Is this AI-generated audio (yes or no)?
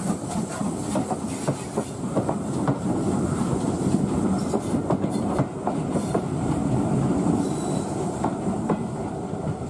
no